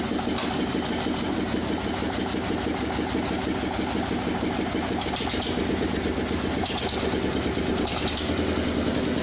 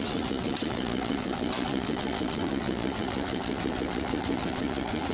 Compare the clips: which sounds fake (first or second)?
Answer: second